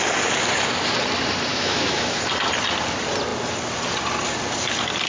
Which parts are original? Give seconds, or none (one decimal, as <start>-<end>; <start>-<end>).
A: 0.0-1.5; 2.2-5.1